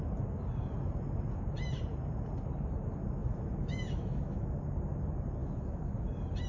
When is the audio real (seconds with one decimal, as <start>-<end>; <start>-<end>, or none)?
0.0-3.2; 4.6-5.4; 5.9-6.5